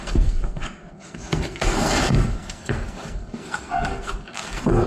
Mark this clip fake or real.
fake